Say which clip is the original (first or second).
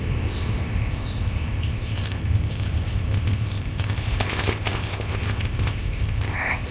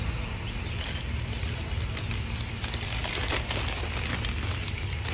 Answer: second